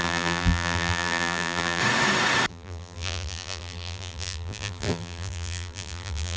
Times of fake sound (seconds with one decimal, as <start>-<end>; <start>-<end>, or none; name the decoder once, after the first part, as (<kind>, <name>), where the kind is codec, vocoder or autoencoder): 0.0-1.8 (vocoder, BigVGAN v2); 2.5-6.4